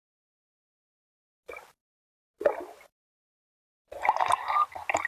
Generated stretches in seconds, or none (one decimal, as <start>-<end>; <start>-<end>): none